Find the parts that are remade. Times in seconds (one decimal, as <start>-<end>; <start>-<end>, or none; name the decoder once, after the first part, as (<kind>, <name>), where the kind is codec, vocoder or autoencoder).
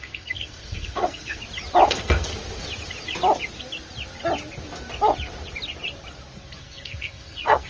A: 0.0-1.4 (codec, SNAC); 1.9-2.3; 6.6-7.7